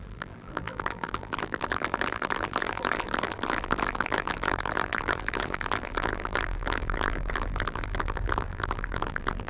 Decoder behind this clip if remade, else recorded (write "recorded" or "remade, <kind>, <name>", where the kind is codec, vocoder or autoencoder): remade, vocoder, BigVGAN v2